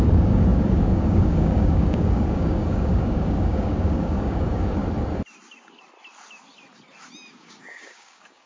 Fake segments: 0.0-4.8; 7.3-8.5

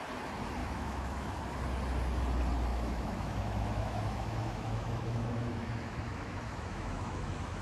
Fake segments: 0.6-1.4; 2.7-7.6

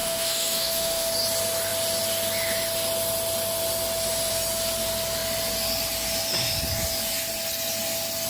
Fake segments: 0.0-1.1